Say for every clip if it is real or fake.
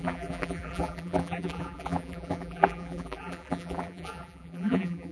fake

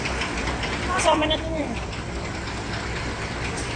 fake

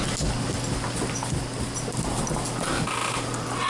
real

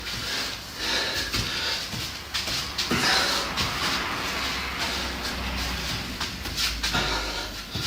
real